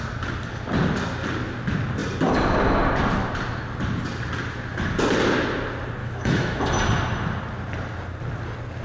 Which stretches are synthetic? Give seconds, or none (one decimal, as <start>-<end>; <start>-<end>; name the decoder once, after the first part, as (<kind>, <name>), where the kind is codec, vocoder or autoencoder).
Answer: 6.0-6.6 (autoencoder, DAC-VAE)